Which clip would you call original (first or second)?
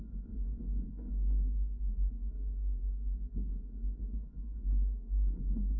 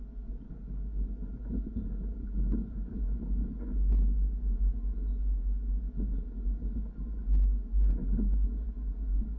second